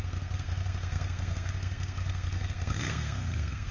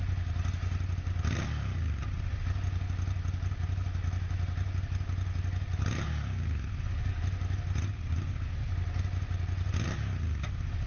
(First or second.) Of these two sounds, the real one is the second